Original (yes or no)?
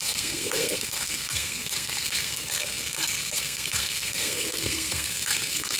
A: no